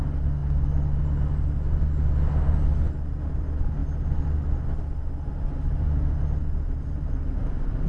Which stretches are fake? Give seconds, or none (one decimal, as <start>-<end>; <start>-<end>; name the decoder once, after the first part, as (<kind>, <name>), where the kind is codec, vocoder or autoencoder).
none